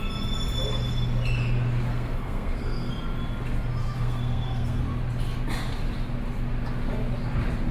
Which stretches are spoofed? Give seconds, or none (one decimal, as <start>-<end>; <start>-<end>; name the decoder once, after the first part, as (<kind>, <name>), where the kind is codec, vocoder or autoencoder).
1.9-2.9 (codec, SNAC); 3.8-4.8